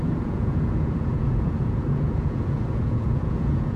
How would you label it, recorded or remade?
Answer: remade